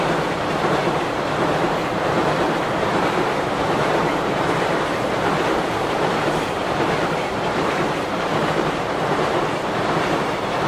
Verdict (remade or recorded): remade